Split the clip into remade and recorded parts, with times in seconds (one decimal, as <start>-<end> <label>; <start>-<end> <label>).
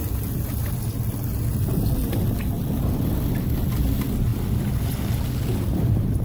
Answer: 0.0-6.2 recorded